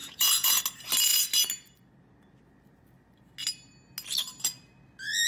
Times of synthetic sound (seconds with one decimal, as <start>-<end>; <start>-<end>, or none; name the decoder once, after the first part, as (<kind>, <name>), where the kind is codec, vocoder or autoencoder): 0.0-0.6 (vocoder, Vocos)